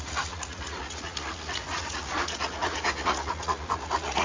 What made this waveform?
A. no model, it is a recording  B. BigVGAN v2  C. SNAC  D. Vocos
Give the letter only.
D